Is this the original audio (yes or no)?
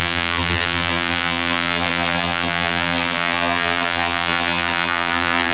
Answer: no